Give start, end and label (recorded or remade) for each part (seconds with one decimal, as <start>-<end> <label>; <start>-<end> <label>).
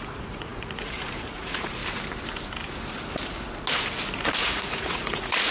0.0-1.8 remade; 1.8-4.4 recorded; 4.4-5.5 remade